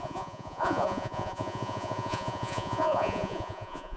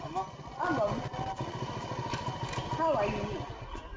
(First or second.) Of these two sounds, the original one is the second